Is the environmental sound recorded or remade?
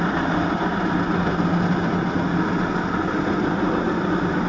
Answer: recorded